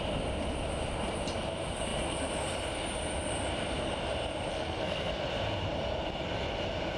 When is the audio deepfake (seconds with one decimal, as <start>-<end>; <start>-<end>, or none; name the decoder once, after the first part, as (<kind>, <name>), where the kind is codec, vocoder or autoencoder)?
4.5-5.2 (codec, SNAC)